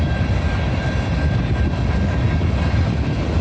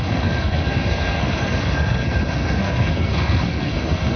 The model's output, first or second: second